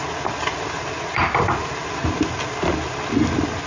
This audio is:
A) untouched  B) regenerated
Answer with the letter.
A